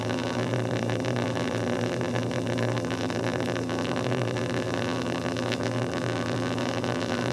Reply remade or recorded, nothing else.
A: remade